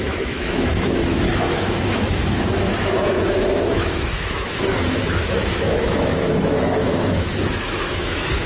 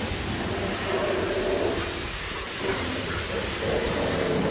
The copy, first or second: first